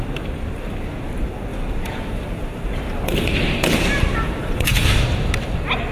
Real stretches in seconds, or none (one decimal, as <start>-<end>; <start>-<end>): 0.0-1.5; 5.0-5.9